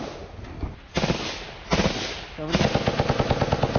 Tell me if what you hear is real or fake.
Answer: real